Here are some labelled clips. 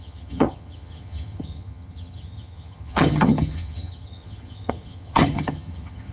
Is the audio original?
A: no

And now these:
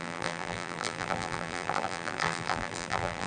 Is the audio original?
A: no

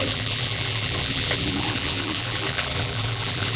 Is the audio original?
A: no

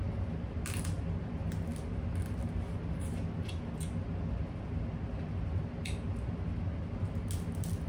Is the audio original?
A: yes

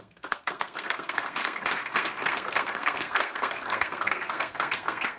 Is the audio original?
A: no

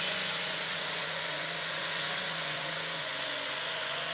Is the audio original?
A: no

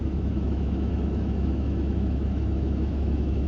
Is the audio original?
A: no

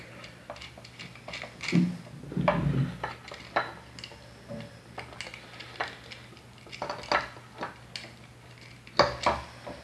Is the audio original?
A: yes